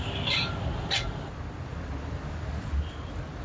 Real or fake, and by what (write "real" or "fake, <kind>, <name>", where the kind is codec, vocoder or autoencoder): real